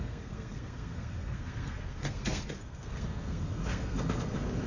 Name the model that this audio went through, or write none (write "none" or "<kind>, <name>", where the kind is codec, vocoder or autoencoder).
codec, SNAC